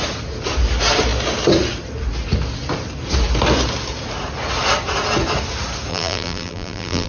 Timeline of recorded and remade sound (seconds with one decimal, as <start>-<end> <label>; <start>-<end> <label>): 0.0-5.9 recorded; 5.9-7.1 remade